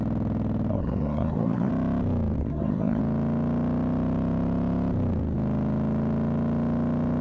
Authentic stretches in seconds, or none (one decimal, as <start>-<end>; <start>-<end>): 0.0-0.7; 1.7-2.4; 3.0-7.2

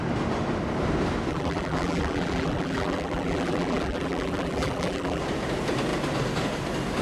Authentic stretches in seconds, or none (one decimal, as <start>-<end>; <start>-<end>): 0.0-1.3; 5.2-7.0

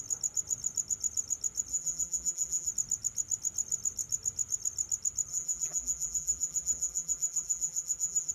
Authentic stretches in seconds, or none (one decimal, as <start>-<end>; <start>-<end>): 0.0-1.7; 2.7-5.3